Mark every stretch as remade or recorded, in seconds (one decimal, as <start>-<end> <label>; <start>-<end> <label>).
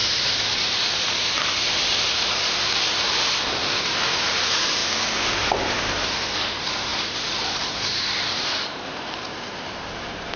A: 0.0-4.8 remade; 4.8-5.8 recorded; 5.8-10.4 remade